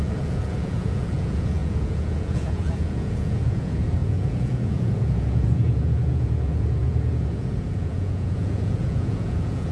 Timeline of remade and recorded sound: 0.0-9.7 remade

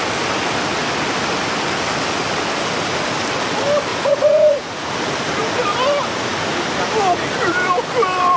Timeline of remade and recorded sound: 0.0-3.9 recorded; 3.9-4.9 remade; 4.9-8.4 recorded

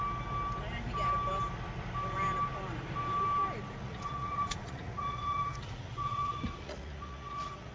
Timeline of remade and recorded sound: 0.0-3.8 recorded; 3.8-7.7 remade

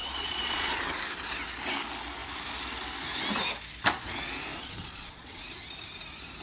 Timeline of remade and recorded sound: 0.0-0.8 remade; 0.8-4.5 recorded; 4.5-5.4 remade; 5.4-6.4 recorded

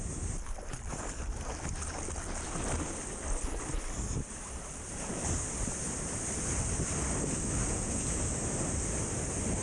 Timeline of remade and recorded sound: 0.0-7.6 recorded; 7.6-8.3 remade; 8.3-9.6 recorded

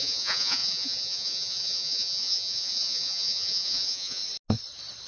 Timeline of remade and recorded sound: 0.0-4.2 remade; 4.2-5.1 recorded